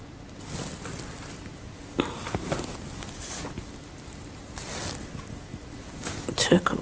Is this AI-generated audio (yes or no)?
no